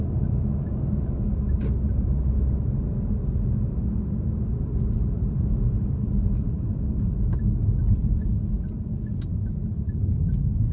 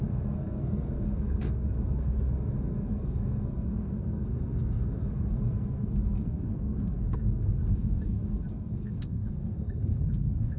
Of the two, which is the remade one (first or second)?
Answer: second